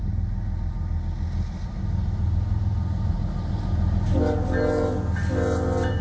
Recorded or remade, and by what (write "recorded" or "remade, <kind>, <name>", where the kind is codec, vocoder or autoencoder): recorded